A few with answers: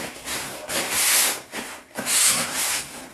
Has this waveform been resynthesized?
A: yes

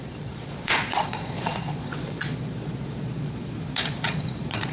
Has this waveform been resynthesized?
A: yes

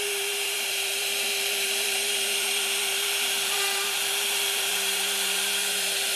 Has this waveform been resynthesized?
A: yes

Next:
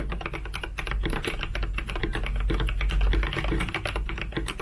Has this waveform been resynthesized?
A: no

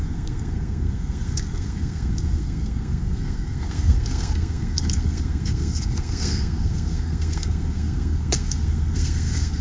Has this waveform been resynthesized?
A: yes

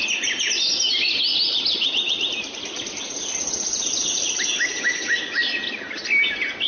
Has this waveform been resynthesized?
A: no